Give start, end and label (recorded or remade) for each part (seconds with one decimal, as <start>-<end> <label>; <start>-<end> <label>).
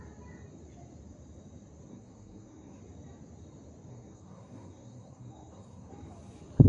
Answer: 0.0-1.9 recorded; 1.9-2.8 remade; 2.8-3.9 recorded; 3.9-5.9 remade; 5.9-6.7 recorded